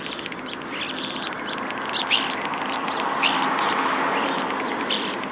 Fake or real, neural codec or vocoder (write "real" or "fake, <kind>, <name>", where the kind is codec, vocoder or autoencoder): real